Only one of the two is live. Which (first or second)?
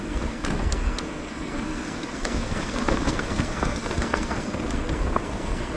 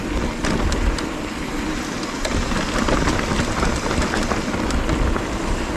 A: second